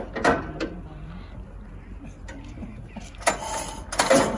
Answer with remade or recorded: recorded